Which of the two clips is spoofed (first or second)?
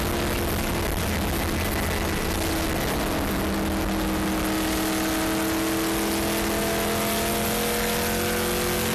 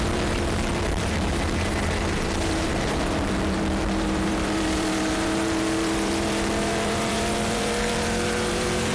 second